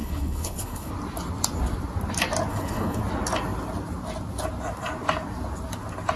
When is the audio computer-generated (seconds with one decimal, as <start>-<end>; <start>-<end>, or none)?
0.0-0.9; 2.5-3.0